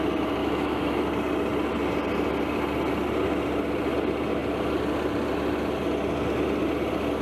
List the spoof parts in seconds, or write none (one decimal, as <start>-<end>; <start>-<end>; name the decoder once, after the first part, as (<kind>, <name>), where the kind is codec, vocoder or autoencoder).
0.4-1.0 (autoencoder, DAC-VAE)